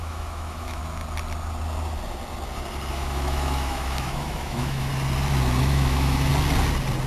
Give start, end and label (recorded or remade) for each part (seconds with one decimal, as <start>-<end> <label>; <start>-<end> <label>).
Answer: 0.0-0.8 remade; 0.8-2.9 recorded; 2.9-4.9 remade; 4.9-5.6 recorded; 5.6-6.3 remade; 6.3-7.1 recorded